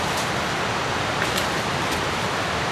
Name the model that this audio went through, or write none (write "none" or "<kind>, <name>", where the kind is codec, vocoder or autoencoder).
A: none